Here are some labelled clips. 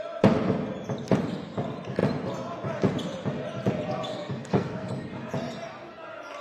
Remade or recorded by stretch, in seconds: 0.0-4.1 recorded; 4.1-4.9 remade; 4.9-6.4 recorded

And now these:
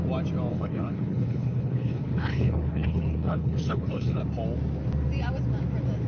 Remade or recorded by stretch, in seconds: 0.0-0.5 recorded; 0.5-4.2 remade; 4.2-6.1 recorded

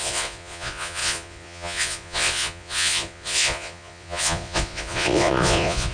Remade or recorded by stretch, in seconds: 0.0-5.9 remade

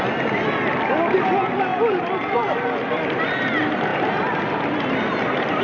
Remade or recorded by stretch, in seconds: 0.0-5.6 recorded

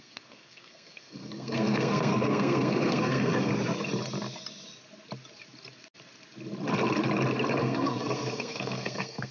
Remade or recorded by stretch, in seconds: 0.0-3.5 remade; 3.5-7.6 recorded; 7.6-9.3 remade

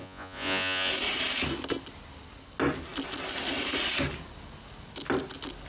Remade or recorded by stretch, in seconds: 0.0-0.9 remade; 0.9-5.7 recorded

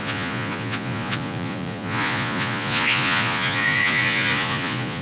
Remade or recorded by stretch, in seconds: 0.0-5.0 remade

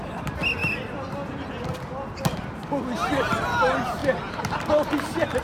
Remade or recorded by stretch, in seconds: 0.0-5.4 recorded